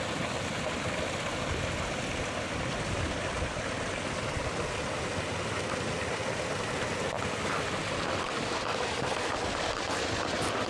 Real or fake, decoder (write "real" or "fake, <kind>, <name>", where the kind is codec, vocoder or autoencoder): real